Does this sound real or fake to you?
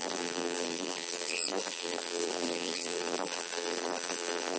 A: fake